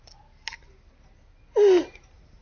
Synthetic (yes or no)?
no